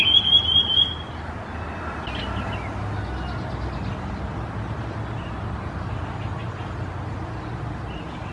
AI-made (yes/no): no